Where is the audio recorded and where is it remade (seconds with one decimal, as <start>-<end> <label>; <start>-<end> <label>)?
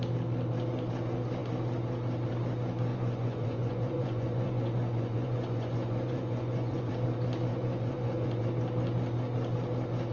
0.0-2.9 recorded; 2.9-6.9 remade; 6.9-7.5 recorded; 7.5-8.5 remade; 8.5-10.1 recorded